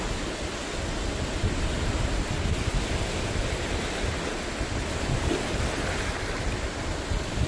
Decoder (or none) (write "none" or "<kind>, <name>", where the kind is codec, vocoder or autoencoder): none